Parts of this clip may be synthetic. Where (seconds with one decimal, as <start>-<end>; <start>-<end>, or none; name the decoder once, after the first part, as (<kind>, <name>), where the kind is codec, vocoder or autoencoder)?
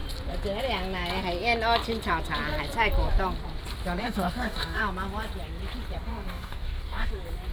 4.0-4.8 (codec, DAC); 6.1-7.1